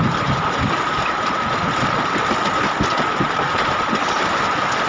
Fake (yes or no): no